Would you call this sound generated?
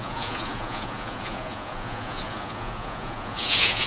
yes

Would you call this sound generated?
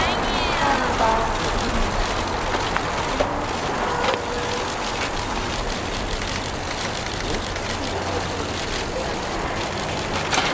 no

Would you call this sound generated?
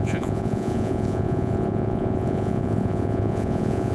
yes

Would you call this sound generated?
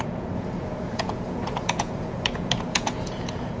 yes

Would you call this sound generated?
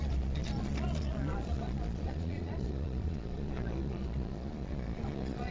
yes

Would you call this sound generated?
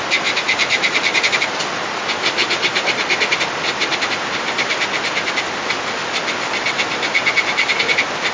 no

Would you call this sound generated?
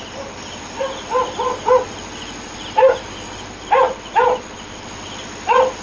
no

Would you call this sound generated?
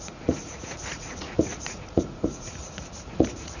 yes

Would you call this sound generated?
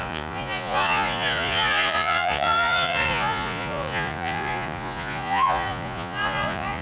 yes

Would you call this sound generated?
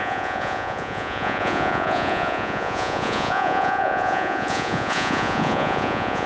yes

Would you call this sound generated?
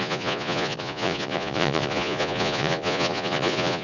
yes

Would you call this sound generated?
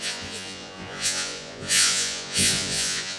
yes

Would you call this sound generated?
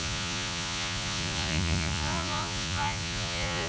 yes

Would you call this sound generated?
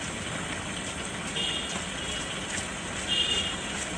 no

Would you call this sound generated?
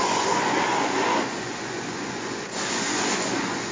yes